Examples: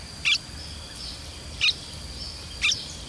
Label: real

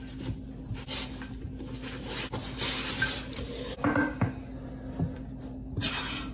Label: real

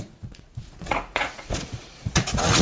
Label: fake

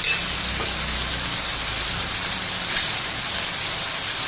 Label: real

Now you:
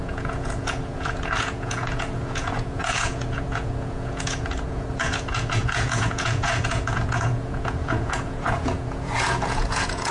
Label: fake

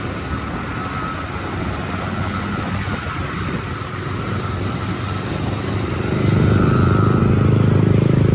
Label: real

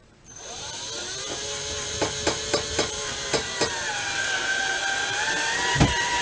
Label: fake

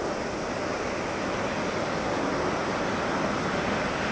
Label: real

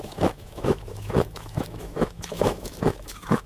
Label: fake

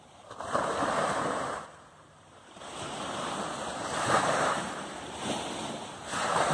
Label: fake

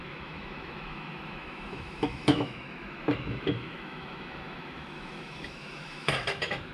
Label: fake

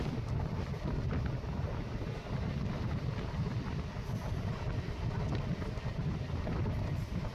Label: real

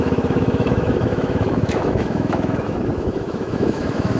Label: fake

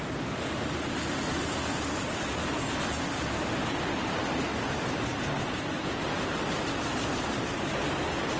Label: real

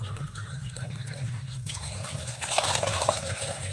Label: fake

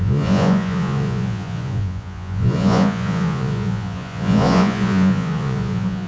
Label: fake